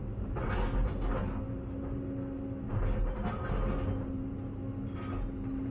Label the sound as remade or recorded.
recorded